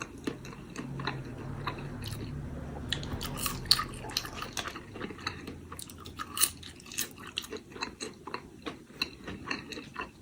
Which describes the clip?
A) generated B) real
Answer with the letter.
B